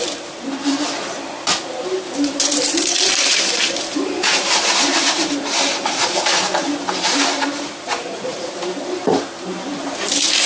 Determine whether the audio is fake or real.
fake